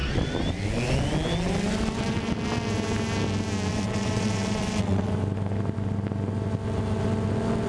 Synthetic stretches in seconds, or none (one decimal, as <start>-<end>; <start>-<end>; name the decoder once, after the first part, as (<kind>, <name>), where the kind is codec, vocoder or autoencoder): 3.7-5.1 (vocoder, WaveNeXt)